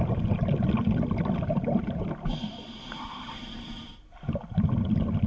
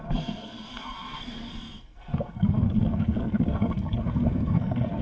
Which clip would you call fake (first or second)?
second